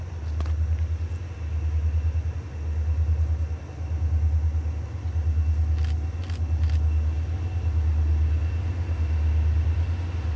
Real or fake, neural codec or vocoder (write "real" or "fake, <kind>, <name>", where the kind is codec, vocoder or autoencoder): real